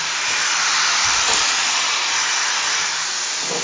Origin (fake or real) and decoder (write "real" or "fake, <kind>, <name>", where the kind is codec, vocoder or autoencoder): real